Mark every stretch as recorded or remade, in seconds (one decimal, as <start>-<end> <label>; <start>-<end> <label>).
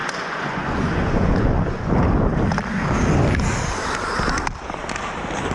0.0-1.9 remade; 1.9-5.5 recorded